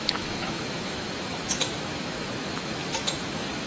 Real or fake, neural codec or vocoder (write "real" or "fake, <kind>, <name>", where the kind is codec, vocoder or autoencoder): fake, autoencoder, DAC-VAE